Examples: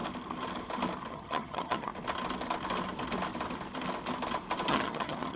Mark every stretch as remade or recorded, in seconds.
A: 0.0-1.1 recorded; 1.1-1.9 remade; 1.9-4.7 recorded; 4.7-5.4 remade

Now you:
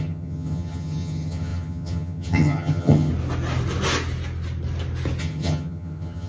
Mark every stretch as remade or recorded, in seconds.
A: 0.0-3.1 remade; 3.1-5.2 recorded; 5.2-6.3 remade

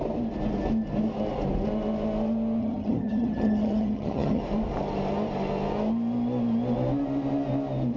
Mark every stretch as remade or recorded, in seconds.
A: 0.0-2.6 recorded; 2.6-4.4 remade; 4.4-8.0 recorded

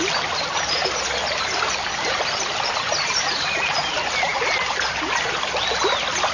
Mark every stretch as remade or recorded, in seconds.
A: 0.0-6.3 recorded

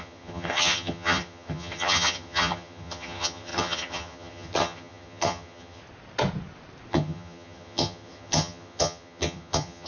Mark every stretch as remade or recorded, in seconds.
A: 0.0-5.8 remade; 5.8-6.9 recorded; 6.9-9.9 remade

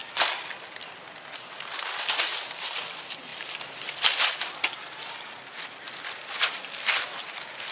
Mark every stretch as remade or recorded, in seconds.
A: 0.0-7.7 recorded

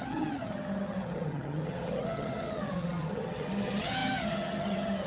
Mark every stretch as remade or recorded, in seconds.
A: 0.0-5.1 remade

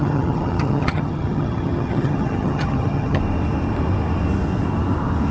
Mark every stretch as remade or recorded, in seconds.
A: 0.0-3.2 remade; 3.2-5.3 recorded